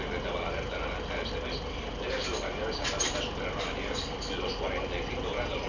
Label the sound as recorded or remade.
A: recorded